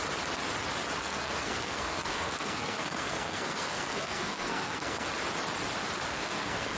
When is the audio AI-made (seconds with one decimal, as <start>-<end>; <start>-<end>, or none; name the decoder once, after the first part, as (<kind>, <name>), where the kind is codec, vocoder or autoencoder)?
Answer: 1.0-5.1 (codec, SNAC); 6.1-6.8